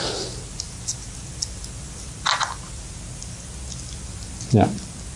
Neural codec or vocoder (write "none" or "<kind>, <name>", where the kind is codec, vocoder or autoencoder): none